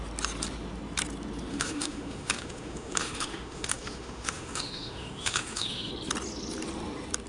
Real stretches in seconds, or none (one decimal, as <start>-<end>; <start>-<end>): 0.0-1.5; 5.9-7.3